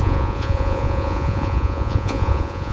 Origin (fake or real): fake